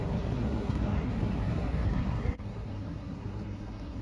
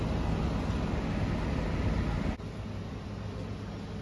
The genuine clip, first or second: second